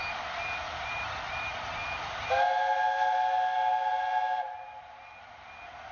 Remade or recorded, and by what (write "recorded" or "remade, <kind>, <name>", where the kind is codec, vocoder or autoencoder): recorded